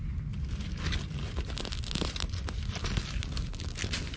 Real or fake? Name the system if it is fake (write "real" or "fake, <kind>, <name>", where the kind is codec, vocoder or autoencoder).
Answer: real